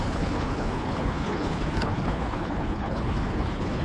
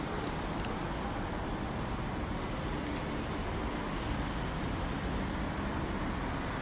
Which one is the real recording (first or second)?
second